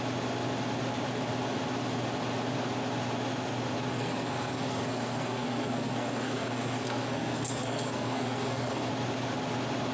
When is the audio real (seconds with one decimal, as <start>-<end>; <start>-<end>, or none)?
0.0-3.9; 8.9-9.9